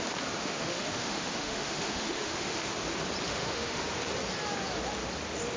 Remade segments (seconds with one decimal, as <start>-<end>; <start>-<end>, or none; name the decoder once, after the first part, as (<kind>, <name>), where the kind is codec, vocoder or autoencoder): 0.4-2.7 (autoencoder, DAC-VAE); 3.3-3.8